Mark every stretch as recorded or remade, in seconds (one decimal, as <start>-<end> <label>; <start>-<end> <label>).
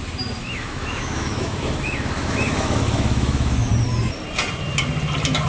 0.0-0.4 recorded; 0.4-3.7 remade; 3.7-5.5 recorded